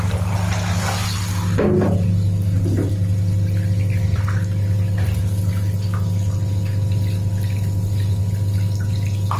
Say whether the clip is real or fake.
real